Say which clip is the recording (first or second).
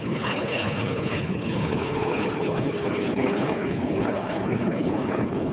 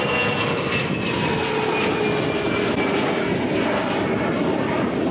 second